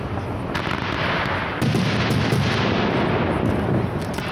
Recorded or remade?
recorded